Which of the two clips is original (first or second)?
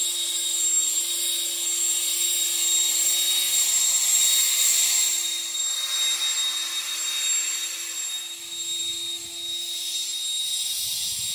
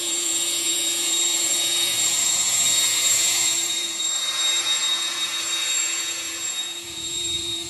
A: first